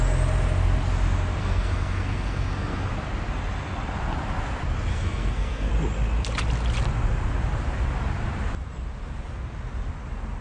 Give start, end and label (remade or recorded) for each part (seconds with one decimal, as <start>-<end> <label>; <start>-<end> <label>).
0.0-1.4 recorded; 1.4-2.9 remade; 2.9-4.9 recorded; 4.9-5.7 remade; 5.7-10.4 recorded